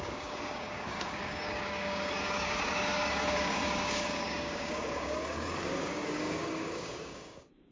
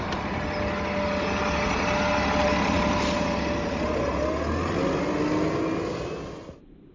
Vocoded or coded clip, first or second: first